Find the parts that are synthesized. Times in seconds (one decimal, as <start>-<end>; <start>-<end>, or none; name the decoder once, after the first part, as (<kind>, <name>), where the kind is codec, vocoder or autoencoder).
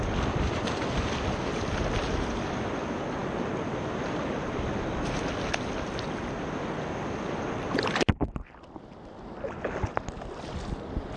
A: none